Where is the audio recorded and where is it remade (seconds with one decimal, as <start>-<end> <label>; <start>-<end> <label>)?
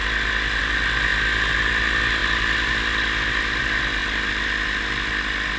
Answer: 0.0-5.6 recorded